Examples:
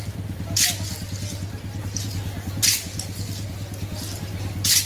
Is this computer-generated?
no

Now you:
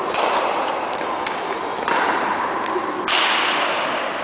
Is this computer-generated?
no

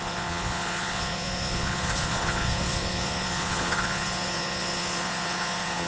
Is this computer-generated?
yes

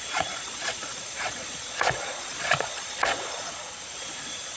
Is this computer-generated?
yes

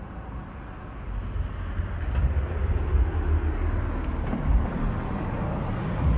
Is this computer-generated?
no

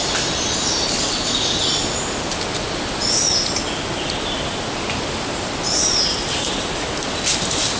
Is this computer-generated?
no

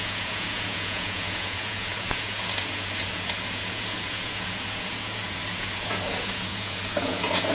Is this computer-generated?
yes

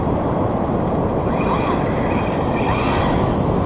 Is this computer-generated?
no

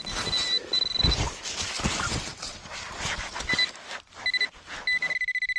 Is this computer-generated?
no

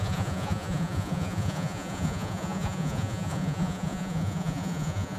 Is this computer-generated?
yes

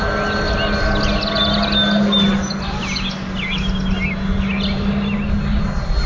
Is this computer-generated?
no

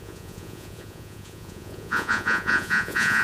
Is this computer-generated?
yes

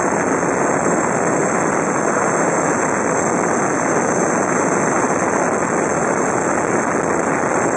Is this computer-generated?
no